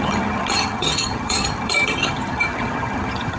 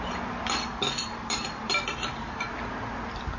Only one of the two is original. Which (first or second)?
second